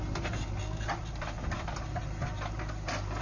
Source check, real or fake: real